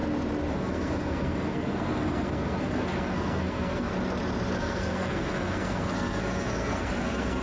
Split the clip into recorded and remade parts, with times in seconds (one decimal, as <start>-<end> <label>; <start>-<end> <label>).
0.0-0.5 recorded; 0.5-3.9 remade; 3.9-4.6 recorded; 4.6-7.4 remade